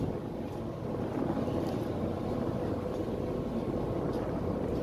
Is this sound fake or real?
real